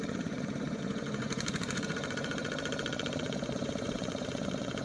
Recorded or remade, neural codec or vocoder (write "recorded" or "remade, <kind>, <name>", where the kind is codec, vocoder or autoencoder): remade, vocoder, Vocos